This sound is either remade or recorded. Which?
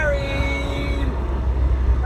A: remade